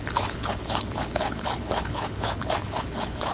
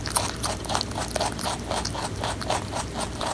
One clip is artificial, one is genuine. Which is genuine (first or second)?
second